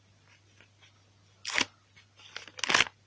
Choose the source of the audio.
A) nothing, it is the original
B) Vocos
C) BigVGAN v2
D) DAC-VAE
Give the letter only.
A